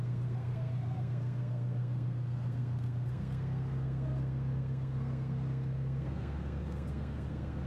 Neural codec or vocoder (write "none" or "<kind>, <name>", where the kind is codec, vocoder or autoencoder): codec, SNAC